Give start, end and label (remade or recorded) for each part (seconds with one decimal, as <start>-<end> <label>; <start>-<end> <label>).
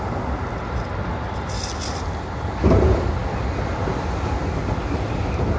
0.0-5.6 recorded